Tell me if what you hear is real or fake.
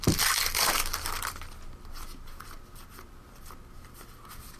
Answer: real